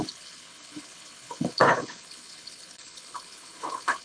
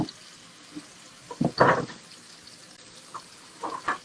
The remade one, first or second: first